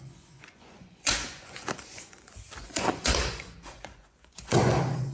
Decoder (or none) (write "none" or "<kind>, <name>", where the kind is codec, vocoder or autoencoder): vocoder, Vocos